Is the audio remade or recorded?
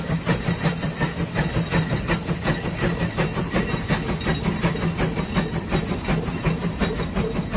recorded